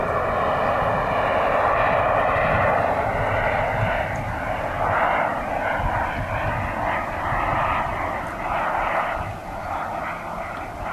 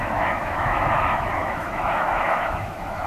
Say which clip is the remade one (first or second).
second